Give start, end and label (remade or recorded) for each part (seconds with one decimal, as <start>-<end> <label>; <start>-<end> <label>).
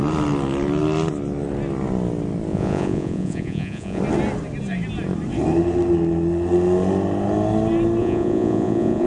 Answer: 0.0-2.5 recorded; 2.5-4.0 remade; 4.0-8.0 recorded; 8.0-9.1 remade